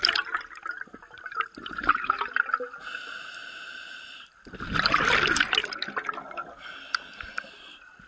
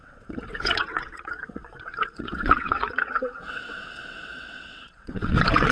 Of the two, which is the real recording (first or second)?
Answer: first